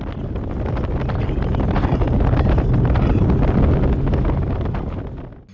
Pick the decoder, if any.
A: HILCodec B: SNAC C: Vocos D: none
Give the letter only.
D